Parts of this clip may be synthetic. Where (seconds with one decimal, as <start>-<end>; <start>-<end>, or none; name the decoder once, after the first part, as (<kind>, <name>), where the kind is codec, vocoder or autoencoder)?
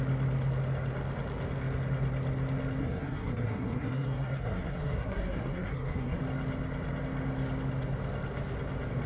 2.8-6.2 (codec, SNAC)